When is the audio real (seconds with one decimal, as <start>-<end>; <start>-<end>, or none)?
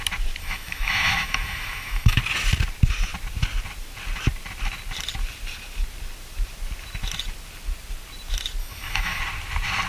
0.0-0.4; 2.2-8.6; 9.2-9.9